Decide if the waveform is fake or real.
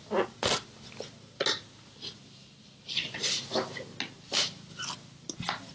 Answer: real